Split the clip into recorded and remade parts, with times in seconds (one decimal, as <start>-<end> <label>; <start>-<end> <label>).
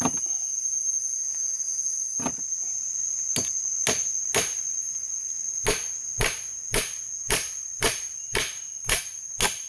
0.0-7.2 recorded; 7.2-9.0 remade; 9.0-9.7 recorded